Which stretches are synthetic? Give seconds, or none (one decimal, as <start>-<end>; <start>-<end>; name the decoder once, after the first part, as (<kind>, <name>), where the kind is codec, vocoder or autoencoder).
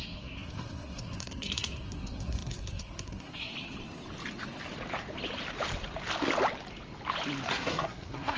0.0-3.5 (codec, SNAC); 7.5-8.4